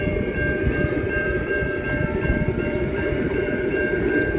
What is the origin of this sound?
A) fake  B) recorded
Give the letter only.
A